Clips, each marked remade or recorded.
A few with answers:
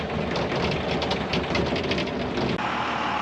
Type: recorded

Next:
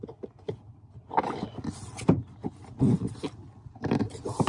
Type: recorded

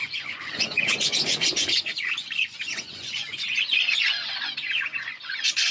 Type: remade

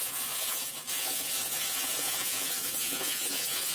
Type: remade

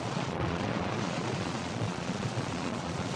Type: remade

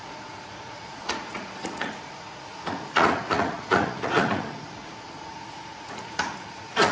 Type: remade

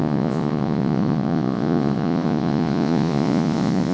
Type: remade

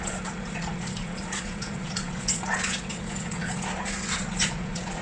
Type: remade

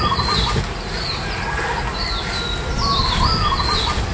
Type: recorded